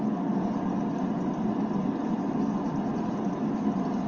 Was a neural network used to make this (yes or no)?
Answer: no